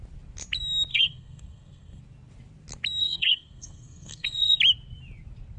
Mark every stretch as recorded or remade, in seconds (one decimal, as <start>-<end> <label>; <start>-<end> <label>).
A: 0.0-0.9 recorded; 0.9-2.0 remade; 2.0-3.0 recorded; 3.0-4.6 remade; 4.6-5.6 recorded